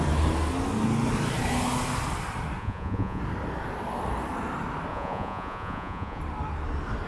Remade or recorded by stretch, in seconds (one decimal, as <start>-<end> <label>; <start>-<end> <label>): 0.0-2.6 recorded; 2.6-3.2 remade; 3.2-4.9 recorded; 4.9-6.2 remade; 6.2-7.1 recorded